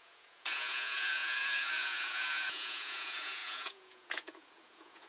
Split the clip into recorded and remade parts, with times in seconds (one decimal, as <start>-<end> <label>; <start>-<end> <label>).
0.0-5.1 remade